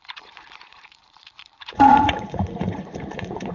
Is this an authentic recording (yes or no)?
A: no